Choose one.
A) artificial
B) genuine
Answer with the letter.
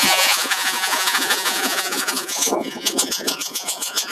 A